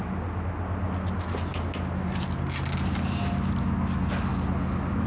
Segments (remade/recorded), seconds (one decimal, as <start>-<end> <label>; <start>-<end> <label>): 0.0-5.1 recorded